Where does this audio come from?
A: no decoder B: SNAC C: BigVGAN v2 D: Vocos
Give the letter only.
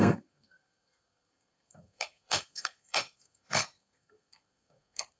B